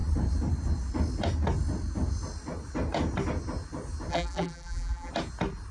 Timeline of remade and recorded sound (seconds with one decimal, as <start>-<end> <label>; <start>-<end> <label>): 0.0-4.1 recorded; 4.1-5.1 remade; 5.1-5.7 recorded